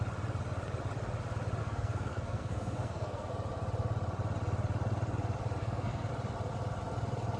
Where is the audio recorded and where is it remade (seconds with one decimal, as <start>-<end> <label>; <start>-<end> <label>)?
0.0-1.6 recorded; 1.6-3.3 remade; 3.3-5.6 recorded; 5.6-6.1 remade; 6.1-7.4 recorded